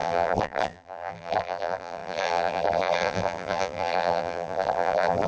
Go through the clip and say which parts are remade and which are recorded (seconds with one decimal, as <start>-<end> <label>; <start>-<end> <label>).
0.0-5.3 remade